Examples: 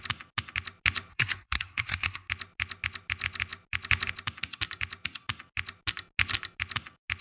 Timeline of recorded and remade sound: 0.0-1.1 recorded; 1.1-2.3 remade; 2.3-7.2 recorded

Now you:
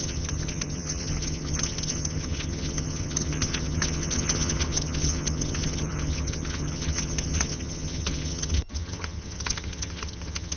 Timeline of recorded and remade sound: 0.0-10.6 remade

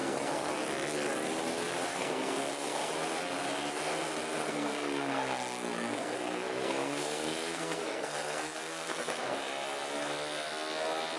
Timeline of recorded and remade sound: 0.0-0.5 remade; 0.5-1.9 recorded; 1.9-2.9 remade; 2.9-4.4 recorded; 4.4-9.4 remade; 9.4-11.2 recorded

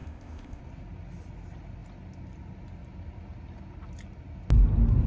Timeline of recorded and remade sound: 0.0-0.6 remade; 0.6-5.1 recorded

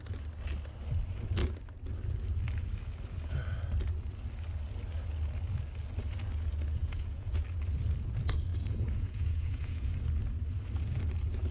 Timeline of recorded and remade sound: 0.0-6.8 recorded; 6.8-7.4 remade; 7.4-8.5 recorded; 8.5-9.9 remade; 9.9-11.5 recorded

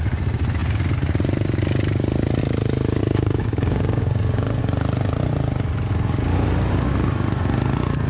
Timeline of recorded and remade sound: 0.0-3.0 recorded; 3.0-4.6 remade; 4.6-8.1 recorded